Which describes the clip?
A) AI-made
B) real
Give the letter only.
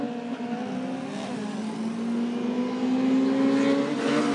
B